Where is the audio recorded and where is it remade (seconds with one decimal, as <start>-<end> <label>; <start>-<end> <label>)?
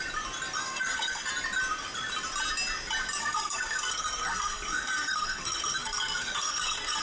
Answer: 0.0-0.6 recorded; 0.6-1.3 remade; 1.3-3.2 recorded; 3.2-7.0 remade